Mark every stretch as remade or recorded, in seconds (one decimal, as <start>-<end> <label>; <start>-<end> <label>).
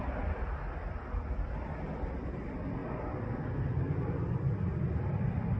0.0-5.6 recorded